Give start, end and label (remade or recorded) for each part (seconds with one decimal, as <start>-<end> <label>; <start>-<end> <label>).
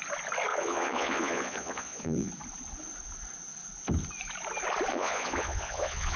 0.0-0.5 recorded; 0.5-2.3 remade; 2.3-4.9 recorded; 4.9-6.2 remade